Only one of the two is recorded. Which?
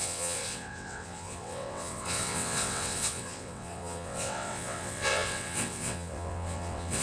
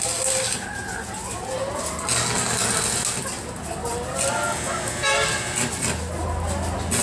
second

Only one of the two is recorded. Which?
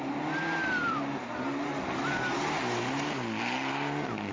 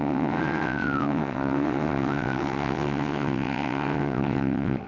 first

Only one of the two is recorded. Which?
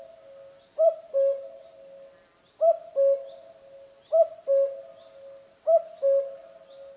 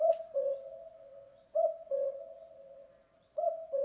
first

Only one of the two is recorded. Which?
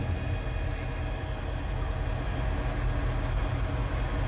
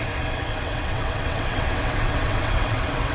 first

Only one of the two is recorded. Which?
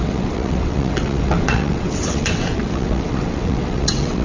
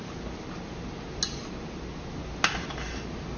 second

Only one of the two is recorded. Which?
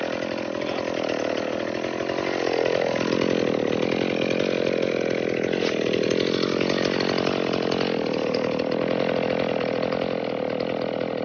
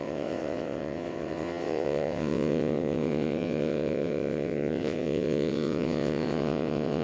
first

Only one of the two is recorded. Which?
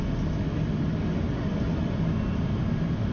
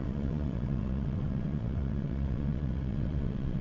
first